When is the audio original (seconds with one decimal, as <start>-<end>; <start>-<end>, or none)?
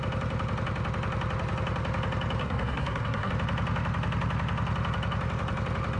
0.0-2.4; 3.3-6.0